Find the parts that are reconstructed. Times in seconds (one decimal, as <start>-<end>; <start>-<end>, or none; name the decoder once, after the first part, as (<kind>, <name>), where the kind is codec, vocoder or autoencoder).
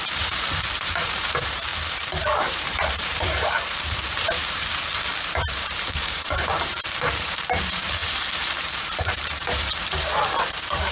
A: 0.0-1.7 (vocoder, BigVGAN v2); 2.5-10.9